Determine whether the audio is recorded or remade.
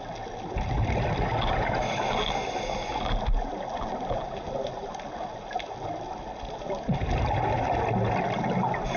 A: recorded